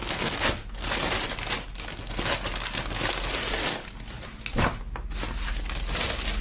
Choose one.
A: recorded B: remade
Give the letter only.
A